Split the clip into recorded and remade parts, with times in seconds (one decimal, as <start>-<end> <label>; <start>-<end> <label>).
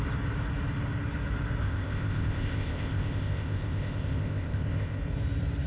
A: 0.0-1.6 recorded; 1.6-5.0 remade; 5.0-5.7 recorded